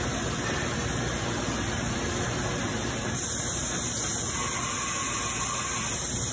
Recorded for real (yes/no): yes